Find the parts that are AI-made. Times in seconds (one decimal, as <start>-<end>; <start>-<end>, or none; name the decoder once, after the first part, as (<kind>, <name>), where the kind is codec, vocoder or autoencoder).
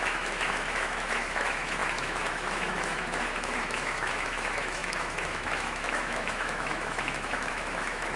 0.0-8.2 (autoencoder, DAC-VAE)